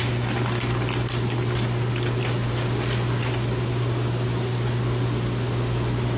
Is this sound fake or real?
real